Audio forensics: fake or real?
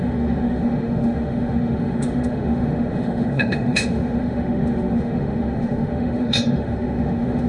fake